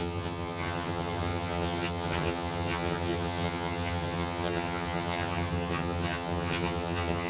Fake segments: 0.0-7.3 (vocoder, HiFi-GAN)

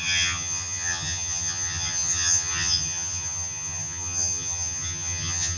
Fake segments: 0.0-5.6 (vocoder, HiFi-GAN)

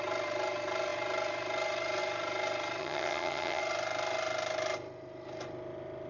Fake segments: 2.8-3.6 (vocoder, HiFi-GAN)

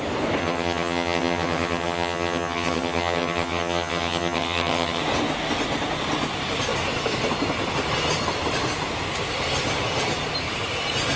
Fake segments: 0.4-5.0 (vocoder, HiFi-GAN)

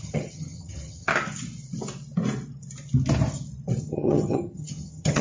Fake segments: 0.0-1.1 (vocoder, HiFi-GAN); 3.8-5.2

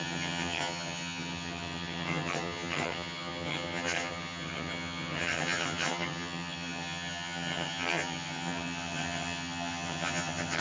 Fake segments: 0.0-10.6 (vocoder, HiFi-GAN)

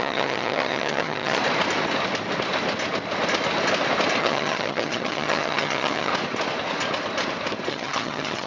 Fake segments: 0.0-1.4 (vocoder, HiFi-GAN); 4.2-6.1; 7.7-8.5